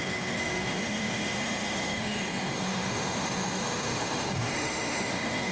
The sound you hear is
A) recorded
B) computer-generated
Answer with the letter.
B